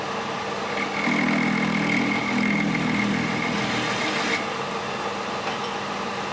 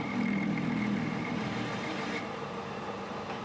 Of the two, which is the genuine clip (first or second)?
first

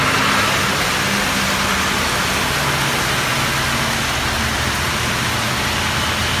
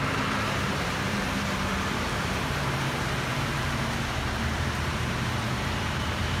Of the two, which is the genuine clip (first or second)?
first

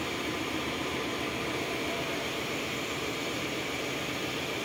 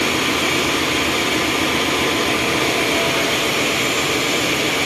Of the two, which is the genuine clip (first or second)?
second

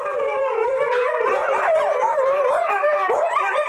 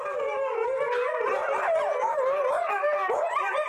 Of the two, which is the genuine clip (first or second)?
second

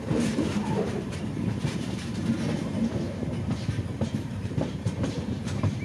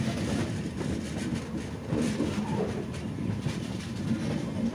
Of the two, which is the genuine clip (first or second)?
second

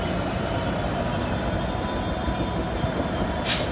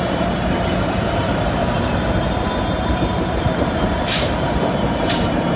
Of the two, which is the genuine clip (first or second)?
first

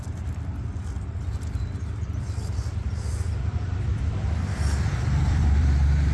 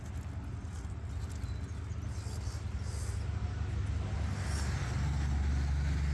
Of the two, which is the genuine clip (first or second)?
second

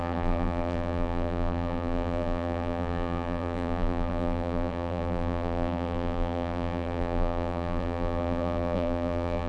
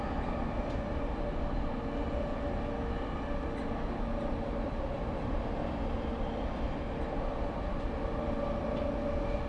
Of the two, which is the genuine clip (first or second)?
second